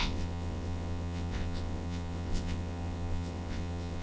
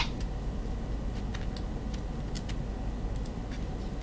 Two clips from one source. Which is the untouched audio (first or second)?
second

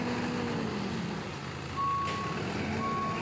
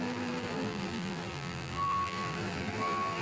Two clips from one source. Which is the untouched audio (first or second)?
first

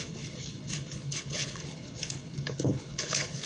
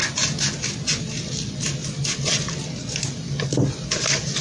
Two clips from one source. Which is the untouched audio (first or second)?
second